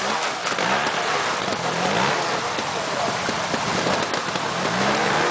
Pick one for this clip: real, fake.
real